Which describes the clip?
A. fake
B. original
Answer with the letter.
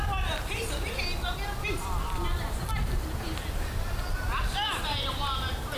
B